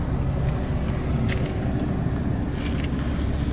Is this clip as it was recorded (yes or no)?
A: yes